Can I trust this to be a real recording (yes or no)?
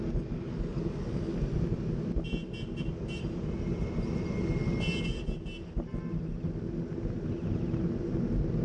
yes